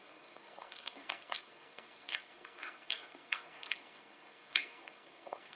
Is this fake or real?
fake